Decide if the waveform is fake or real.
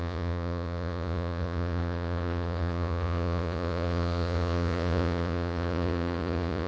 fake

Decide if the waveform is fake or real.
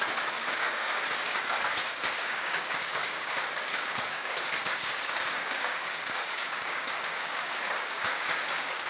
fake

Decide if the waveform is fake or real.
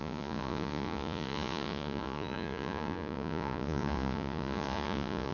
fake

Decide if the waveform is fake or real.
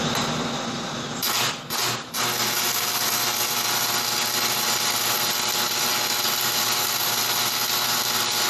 real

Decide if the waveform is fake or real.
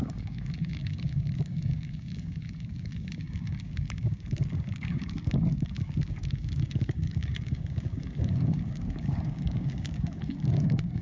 fake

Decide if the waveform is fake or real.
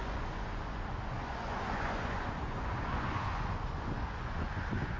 fake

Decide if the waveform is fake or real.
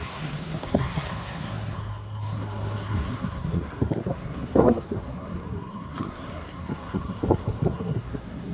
fake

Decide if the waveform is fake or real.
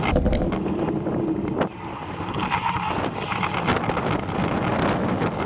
real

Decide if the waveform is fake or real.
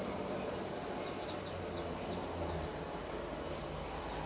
real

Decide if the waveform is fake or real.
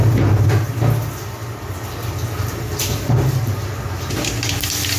real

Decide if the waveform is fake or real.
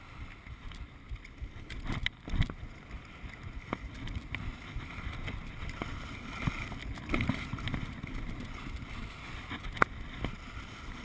real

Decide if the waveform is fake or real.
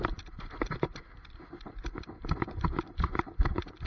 real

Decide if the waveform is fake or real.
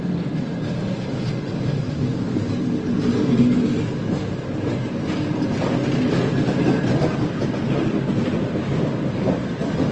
real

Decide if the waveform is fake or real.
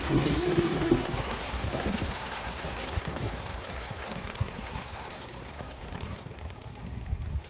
fake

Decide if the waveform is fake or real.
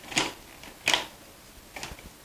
real